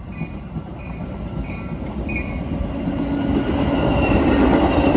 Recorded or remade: recorded